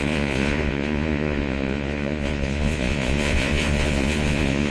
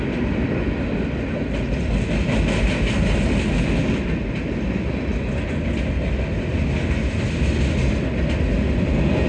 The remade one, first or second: first